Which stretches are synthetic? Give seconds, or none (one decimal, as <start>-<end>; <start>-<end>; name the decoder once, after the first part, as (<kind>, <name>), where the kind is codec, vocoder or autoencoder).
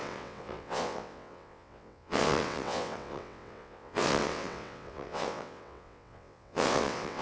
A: 0.0-7.2 (vocoder, WaveNeXt)